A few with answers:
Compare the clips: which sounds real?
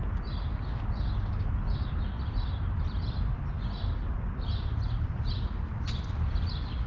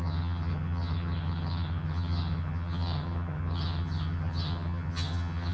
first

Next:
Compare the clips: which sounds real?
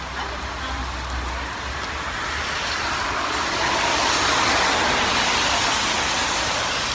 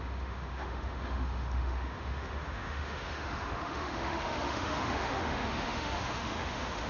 first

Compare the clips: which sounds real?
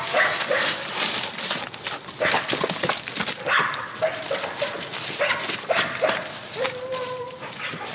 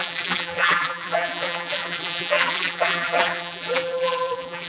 first